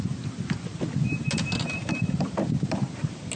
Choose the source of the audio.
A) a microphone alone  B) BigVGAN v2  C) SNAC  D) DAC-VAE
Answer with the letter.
A